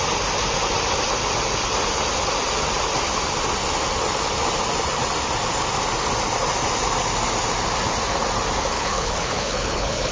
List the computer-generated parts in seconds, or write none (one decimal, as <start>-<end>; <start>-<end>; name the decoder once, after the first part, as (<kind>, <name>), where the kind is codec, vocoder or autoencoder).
8.7-10.1 (codec, HILCodec)